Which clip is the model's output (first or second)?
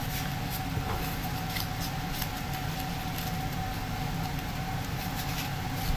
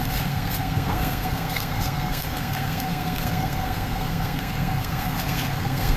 second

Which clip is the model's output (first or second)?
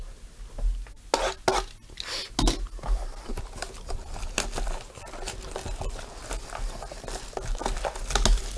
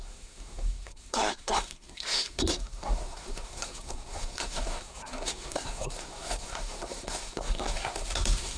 second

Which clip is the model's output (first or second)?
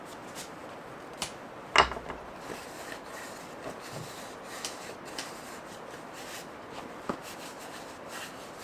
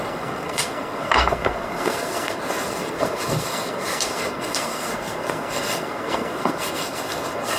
second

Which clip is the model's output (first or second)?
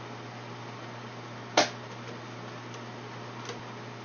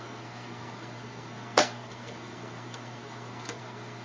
second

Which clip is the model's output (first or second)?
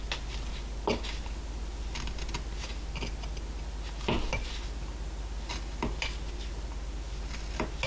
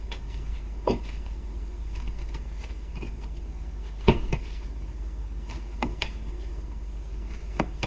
second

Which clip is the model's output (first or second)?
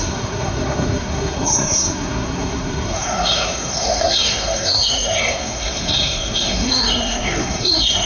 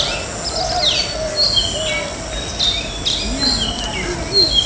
first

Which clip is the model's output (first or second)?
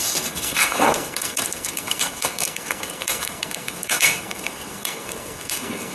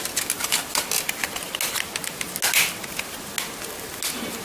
first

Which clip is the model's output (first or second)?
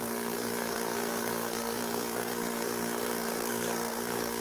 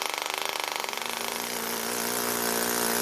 first